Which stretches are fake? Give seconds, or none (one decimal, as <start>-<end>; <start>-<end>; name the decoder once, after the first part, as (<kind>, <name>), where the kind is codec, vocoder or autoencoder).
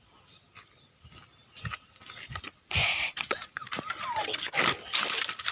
2.8-3.8 (vocoder, Vocos)